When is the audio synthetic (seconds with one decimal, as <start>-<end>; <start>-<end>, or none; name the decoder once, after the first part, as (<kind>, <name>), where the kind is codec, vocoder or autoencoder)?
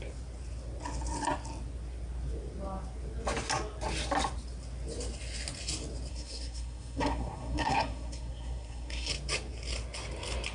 6.1-9.1 (codec, SNAC)